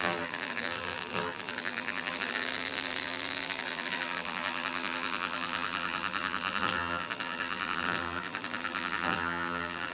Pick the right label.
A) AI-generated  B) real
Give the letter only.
A